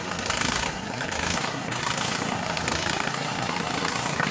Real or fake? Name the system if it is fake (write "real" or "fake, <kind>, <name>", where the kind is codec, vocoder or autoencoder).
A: fake, codec, SNAC